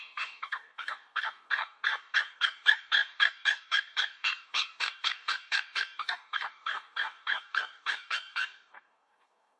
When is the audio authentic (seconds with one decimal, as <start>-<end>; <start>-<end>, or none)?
none